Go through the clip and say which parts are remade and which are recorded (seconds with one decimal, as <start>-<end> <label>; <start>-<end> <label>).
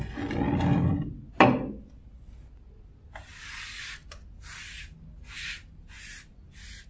0.0-6.9 recorded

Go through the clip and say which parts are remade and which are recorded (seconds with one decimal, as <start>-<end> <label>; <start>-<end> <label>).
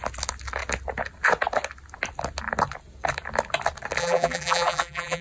0.0-4.0 recorded; 4.0-5.2 remade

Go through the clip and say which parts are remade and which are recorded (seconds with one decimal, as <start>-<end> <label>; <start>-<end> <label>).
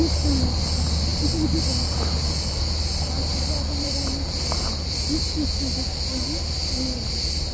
0.0-3.3 recorded; 3.3-3.9 remade; 3.9-7.5 recorded